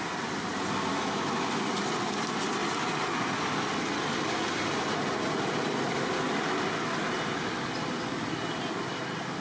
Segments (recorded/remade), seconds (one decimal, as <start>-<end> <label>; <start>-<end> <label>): 0.0-0.9 recorded; 0.9-1.5 remade; 1.5-9.4 recorded